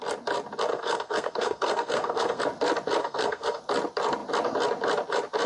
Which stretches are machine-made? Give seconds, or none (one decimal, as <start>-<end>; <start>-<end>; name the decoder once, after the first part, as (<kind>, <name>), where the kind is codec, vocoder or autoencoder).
0.7-2.4 (codec, SNAC); 3.0-3.6